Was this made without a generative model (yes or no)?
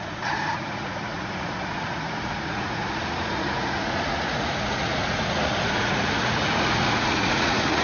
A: no